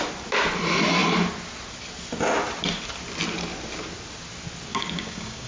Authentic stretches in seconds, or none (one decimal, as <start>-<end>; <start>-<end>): 0.0-4.7